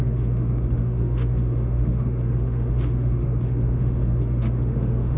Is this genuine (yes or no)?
no